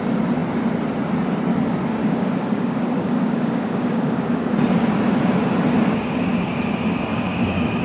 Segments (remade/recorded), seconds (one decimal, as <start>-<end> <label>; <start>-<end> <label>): 0.0-2.0 recorded; 2.0-4.5 remade; 4.5-7.1 recorded; 7.1-7.8 remade